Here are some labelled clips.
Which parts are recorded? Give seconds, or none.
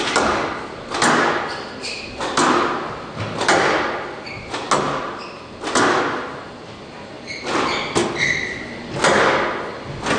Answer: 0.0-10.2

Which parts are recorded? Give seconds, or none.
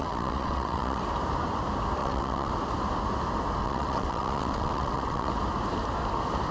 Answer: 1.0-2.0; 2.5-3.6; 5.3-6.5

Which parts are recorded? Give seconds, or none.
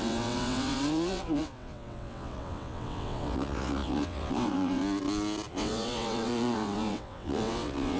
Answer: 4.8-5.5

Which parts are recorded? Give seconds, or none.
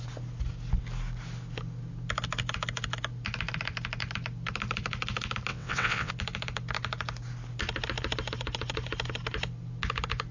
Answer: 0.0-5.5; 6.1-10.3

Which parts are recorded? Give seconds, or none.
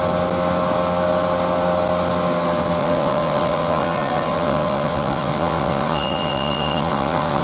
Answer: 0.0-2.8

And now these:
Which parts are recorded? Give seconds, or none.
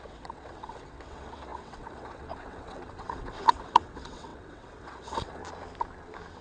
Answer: 5.4-6.4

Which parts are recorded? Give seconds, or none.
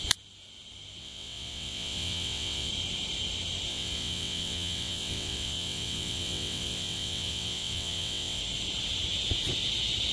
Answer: 0.0-1.0; 2.7-3.7; 8.4-10.1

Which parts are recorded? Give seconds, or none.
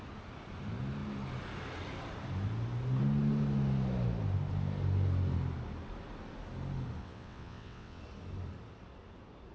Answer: 0.0-7.0; 8.0-9.5